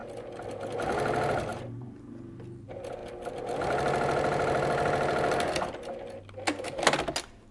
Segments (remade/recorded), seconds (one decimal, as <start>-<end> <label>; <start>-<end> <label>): 0.0-1.5 recorded; 1.5-2.1 remade; 2.1-7.5 recorded